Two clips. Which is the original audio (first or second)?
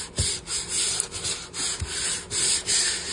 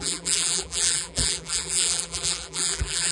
first